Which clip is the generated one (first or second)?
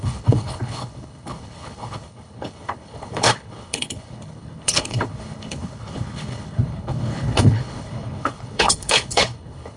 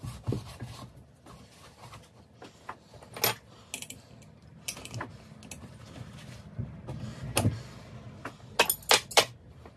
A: first